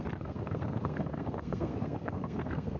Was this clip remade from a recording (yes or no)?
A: yes